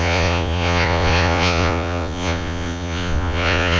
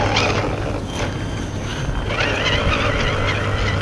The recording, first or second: second